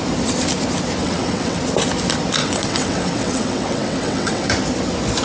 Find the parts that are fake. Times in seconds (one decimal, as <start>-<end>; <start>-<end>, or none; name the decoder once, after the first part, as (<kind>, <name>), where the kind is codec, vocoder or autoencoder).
1.0-1.6 (vocoder, WaveNeXt); 2.4-4.5